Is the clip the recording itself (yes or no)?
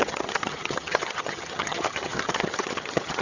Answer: no